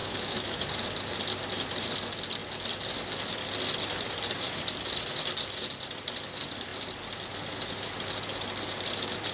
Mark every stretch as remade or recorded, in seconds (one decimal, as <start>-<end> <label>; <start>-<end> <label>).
0.0-0.6 remade; 0.6-9.3 recorded